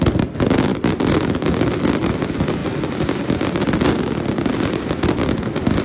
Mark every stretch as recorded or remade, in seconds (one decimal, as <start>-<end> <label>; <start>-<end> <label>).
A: 0.0-5.8 recorded